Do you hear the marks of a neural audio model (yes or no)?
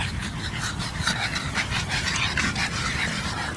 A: yes